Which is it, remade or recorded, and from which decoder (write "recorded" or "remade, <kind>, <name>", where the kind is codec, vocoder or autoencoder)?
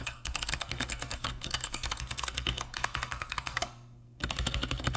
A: remade, codec, SNAC